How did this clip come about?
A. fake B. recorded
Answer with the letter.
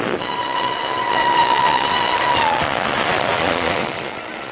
A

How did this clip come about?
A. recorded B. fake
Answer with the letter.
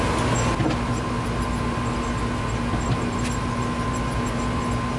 A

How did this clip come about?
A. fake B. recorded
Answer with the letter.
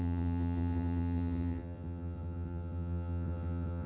A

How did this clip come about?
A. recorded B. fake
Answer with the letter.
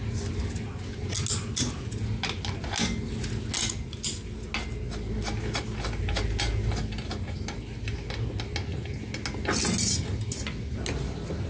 A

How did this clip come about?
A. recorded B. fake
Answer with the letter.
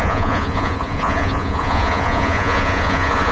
B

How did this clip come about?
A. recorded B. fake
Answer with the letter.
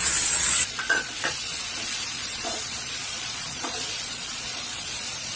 B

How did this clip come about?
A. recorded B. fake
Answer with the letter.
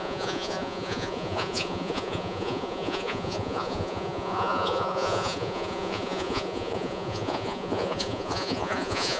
B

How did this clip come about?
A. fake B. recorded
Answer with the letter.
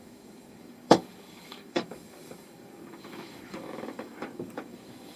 A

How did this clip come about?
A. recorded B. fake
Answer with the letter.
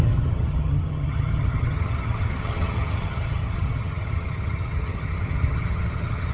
B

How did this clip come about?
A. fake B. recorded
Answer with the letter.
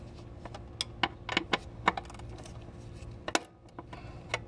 B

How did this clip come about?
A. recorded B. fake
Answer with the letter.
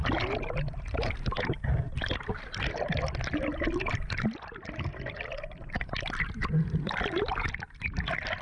A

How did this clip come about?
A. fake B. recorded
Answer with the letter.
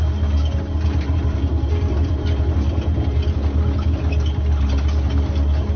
B